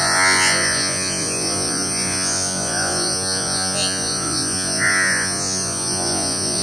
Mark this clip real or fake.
fake